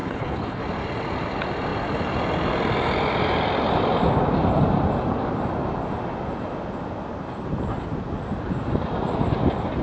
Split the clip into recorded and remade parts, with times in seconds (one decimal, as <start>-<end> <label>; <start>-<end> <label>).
0.0-0.6 remade; 0.6-9.8 recorded